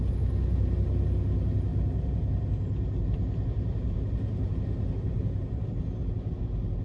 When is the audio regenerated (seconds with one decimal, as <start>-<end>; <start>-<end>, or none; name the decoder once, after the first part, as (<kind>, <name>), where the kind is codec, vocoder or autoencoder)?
none

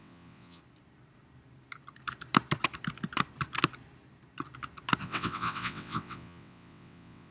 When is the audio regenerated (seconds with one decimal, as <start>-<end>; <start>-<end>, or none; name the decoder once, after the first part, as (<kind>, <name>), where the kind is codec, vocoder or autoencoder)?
0.0-0.6 (vocoder, WaveNeXt); 5.0-7.3

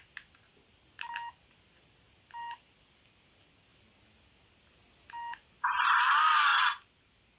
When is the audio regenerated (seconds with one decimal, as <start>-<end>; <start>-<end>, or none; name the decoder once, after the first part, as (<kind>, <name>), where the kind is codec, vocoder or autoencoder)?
none

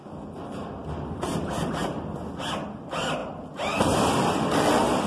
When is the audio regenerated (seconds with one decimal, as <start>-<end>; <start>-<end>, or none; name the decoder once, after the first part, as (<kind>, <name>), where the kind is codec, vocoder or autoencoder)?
none